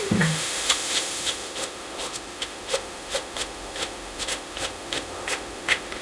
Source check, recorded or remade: remade